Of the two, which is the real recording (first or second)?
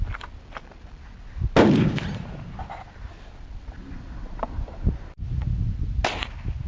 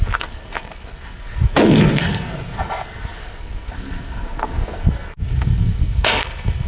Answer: first